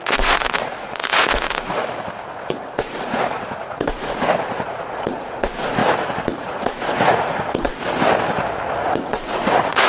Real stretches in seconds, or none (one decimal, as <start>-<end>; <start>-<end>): 1.8-2.5; 5.8-6.4; 7.7-8.8